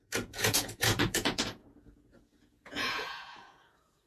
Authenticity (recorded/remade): remade